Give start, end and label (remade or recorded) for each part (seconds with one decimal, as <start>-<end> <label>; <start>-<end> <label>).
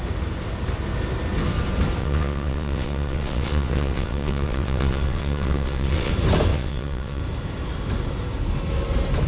0.0-2.0 recorded; 2.0-6.1 remade; 6.1-6.5 recorded; 6.5-7.2 remade; 7.2-9.3 recorded